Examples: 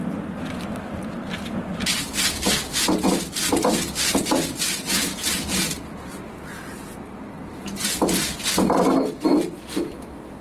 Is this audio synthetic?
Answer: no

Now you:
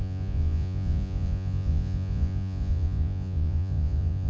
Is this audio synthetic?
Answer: yes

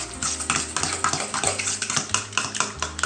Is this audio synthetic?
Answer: no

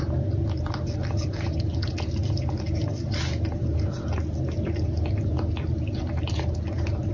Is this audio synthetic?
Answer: no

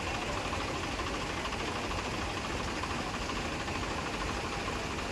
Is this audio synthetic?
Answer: no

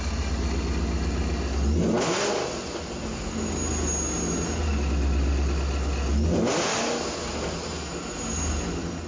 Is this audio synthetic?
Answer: no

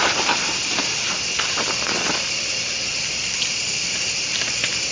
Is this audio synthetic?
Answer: no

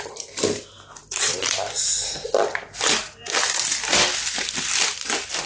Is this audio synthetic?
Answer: no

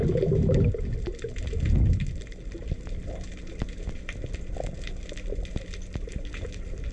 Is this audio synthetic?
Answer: no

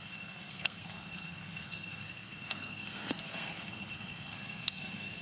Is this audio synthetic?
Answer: yes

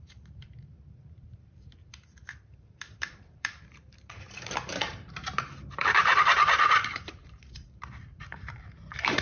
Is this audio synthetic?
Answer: yes